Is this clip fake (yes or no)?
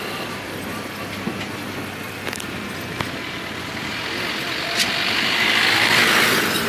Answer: no